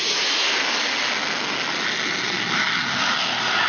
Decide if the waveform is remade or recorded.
recorded